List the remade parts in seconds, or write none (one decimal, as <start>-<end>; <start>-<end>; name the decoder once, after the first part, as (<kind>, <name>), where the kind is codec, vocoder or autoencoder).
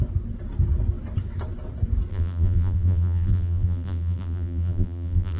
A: 2.1-5.4 (vocoder, BigVGAN v2)